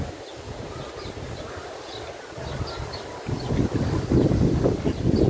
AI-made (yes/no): no